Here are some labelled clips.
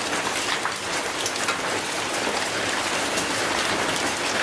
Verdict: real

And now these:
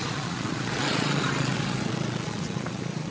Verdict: fake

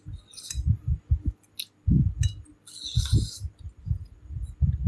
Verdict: real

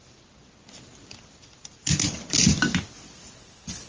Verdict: real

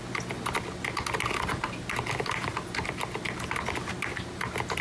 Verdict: real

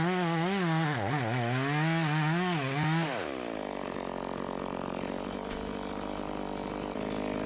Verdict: real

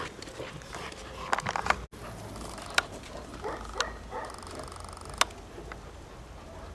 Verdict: real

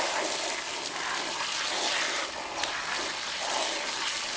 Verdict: real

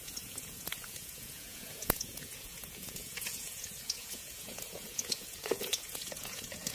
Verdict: fake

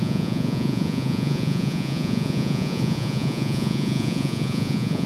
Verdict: fake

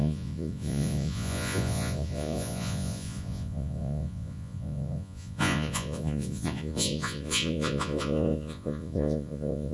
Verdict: fake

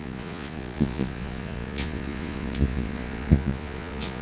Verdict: fake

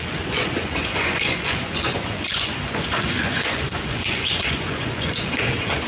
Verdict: fake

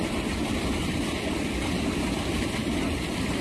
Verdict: real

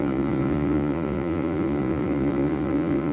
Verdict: fake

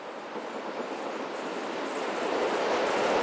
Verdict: real